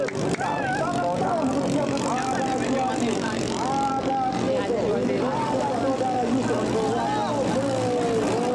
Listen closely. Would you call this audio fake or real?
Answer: real